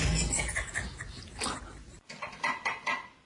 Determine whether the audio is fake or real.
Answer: real